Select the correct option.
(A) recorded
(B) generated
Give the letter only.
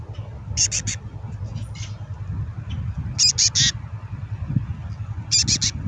A